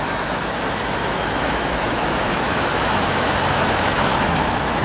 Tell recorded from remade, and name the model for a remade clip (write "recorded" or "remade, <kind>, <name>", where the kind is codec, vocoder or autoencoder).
remade, autoencoder, DAC-VAE